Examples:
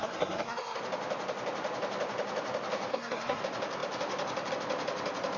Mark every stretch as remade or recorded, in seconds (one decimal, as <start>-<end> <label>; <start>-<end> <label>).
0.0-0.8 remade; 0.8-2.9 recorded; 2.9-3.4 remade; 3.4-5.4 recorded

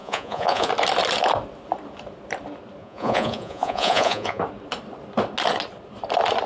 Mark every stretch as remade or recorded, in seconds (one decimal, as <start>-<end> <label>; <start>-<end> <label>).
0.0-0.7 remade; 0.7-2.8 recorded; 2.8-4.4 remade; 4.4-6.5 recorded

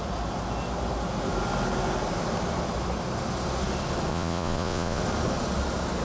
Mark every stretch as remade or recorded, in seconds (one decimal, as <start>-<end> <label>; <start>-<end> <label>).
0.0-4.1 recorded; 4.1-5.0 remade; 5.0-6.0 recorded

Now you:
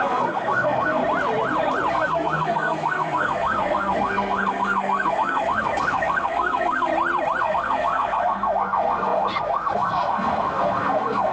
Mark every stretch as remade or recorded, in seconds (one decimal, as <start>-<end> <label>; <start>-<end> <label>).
0.0-1.0 remade; 1.0-1.9 recorded; 1.9-6.9 remade; 6.9-7.4 recorded; 7.4-11.3 remade

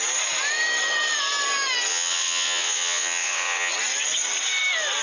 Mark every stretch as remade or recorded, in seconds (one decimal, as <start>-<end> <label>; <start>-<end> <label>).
0.0-1.9 recorded; 1.9-3.7 remade; 3.7-5.0 recorded

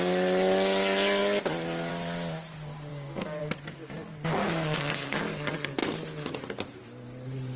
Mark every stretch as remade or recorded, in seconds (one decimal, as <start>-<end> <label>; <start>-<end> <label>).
0.0-2.9 recorded; 2.9-3.4 remade; 3.4-4.4 recorded; 4.4-5.2 remade; 5.2-7.6 recorded

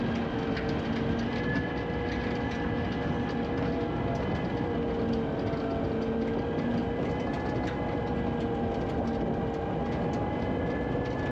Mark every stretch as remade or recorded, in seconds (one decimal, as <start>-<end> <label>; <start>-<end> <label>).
0.0-11.3 recorded

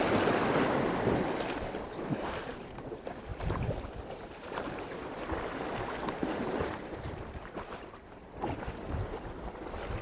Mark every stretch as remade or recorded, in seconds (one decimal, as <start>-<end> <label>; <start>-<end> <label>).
0.0-3.3 recorded; 3.3-4.7 remade; 4.7-6.2 recorded; 6.2-8.9 remade; 8.9-10.0 recorded